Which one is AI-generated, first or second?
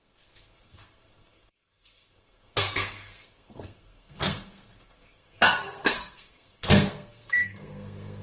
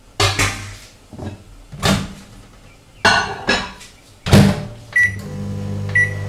first